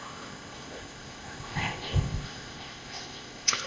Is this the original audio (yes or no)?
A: no